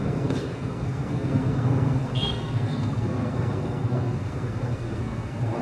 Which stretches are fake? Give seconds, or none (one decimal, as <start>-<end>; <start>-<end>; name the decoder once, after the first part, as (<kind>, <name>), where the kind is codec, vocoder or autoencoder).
0.0-5.6 (codec, SNAC)